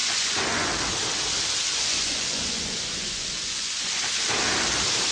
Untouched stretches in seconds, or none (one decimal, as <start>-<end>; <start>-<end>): 0.7-1.7; 4.0-5.1